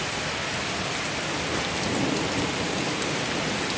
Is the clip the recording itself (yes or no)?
yes